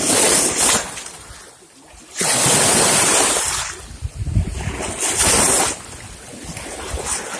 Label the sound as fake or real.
real